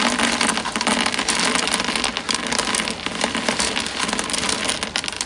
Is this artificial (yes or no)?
no